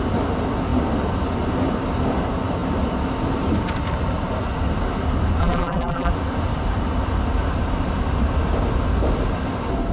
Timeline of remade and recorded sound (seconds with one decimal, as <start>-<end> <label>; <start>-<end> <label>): 0.0-5.4 recorded; 5.4-6.1 remade; 6.1-9.9 recorded